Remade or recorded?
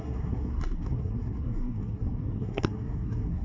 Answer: remade